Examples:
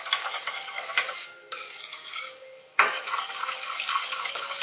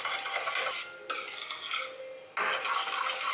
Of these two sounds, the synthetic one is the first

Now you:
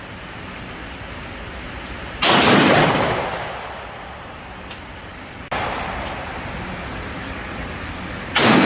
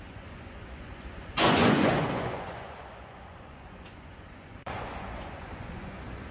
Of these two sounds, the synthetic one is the second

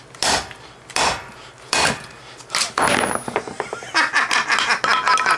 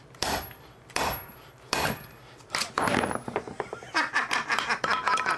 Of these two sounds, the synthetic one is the second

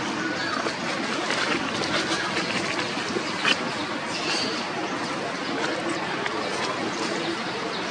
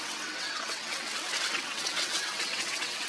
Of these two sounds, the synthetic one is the second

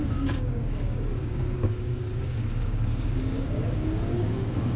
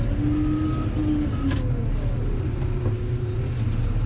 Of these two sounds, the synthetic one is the first